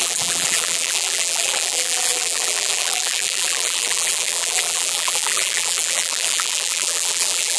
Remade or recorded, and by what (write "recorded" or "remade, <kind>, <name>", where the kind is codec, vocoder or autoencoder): remade, vocoder, BigVGAN v2